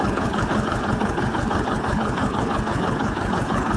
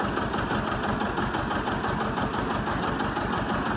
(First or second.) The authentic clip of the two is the second